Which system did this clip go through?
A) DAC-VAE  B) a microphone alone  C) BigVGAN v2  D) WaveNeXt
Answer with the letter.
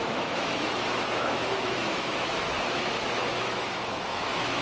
A